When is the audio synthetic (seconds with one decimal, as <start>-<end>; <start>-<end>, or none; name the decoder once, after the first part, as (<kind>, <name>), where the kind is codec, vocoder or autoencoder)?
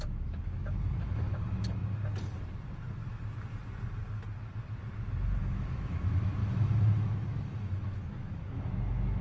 0.0-1.8 (autoencoder, DAC-VAE); 5.4-9.2